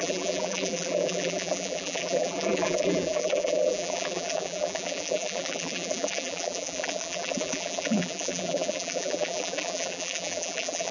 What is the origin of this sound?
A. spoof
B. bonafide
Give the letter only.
A